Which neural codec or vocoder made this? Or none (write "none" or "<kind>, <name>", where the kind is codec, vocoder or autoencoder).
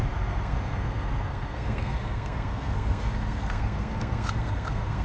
codec, SNAC